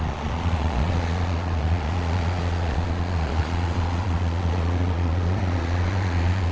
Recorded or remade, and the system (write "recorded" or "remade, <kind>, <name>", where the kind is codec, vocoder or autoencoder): remade, vocoder, Vocos